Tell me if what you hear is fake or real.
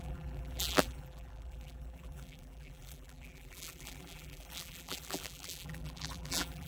fake